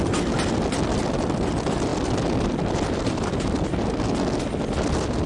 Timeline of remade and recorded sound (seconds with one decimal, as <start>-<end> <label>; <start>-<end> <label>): 0.0-5.3 recorded